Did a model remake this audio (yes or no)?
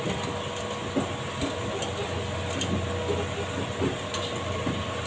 no